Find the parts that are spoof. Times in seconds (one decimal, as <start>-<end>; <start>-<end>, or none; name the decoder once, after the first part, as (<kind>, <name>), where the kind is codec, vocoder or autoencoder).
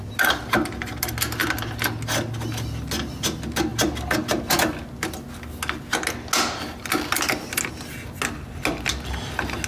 none